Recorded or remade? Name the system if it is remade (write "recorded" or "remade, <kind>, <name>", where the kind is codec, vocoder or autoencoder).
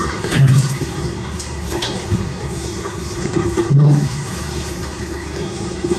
remade, codec, SNAC